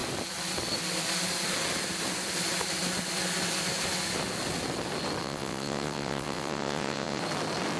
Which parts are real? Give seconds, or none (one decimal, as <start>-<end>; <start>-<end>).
0.0-5.2; 7.2-7.8